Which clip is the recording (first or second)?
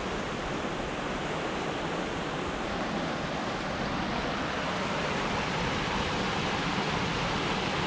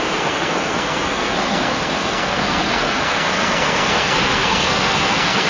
first